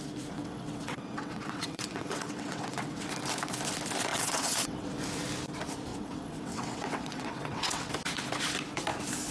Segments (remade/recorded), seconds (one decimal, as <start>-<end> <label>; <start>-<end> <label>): 0.0-0.4 recorded; 0.4-3.1 remade; 3.1-4.1 recorded; 4.1-4.9 remade; 4.9-5.9 recorded; 5.9-7.9 remade; 7.9-9.3 recorded